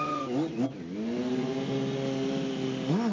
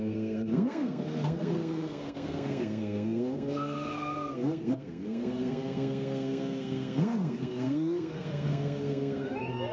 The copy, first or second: second